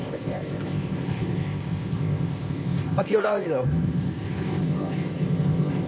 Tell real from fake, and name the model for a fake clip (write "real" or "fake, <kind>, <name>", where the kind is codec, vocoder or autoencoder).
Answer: fake, codec, ZipCodec